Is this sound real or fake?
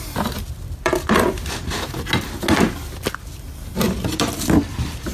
real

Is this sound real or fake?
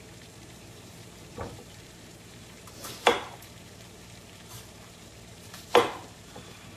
fake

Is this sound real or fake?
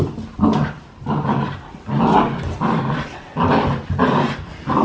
real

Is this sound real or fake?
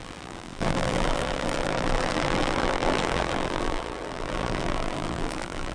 fake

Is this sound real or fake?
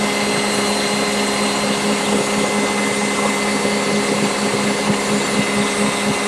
real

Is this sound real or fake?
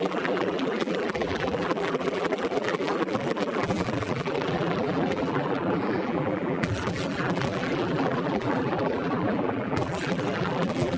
fake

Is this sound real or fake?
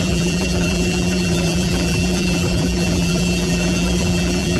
fake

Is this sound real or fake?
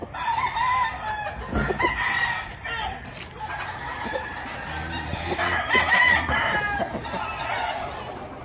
real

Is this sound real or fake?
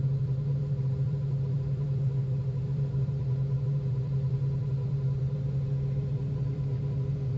fake